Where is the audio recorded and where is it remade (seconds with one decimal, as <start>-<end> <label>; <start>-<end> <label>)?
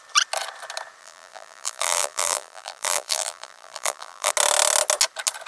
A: 0.0-1.0 recorded; 1.0-4.3 remade; 4.3-5.5 recorded